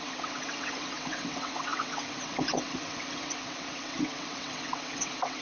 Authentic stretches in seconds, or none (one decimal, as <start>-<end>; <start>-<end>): none